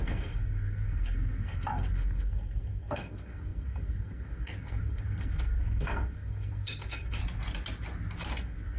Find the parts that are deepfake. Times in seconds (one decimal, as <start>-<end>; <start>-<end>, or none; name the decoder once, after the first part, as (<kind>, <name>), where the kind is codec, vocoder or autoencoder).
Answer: 0.0-7.2 (codec, SNAC); 8.4-8.8